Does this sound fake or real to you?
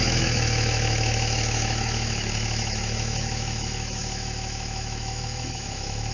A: fake